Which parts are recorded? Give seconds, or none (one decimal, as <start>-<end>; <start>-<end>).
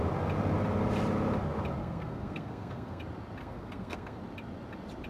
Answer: 0.0-1.8; 3.0-3.4; 4.2-5.1